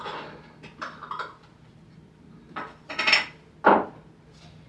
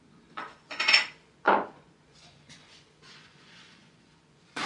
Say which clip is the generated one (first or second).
second